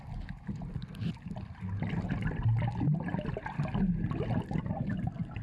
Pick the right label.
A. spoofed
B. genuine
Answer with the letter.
B